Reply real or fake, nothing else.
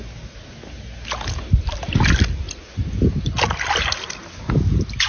real